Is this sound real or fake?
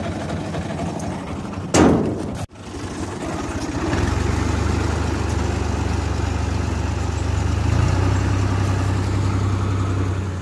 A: real